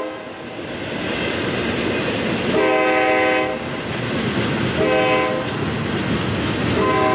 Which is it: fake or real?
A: real